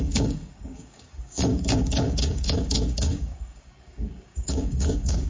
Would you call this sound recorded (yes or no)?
no